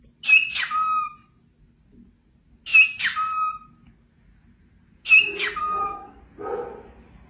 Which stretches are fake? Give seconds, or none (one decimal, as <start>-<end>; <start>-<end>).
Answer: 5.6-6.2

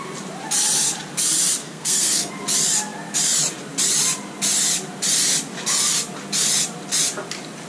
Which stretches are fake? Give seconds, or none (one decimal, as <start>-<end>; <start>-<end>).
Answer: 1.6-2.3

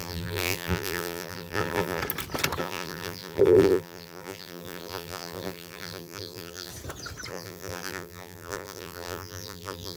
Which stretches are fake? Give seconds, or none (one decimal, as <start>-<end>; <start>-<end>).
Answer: 0.0-2.0; 2.6-6.7; 7.3-10.0